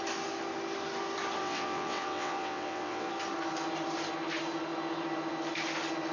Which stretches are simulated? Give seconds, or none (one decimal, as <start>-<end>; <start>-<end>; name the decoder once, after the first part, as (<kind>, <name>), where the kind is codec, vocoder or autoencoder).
1.4-3.1 (vocoder, WaveNeXt)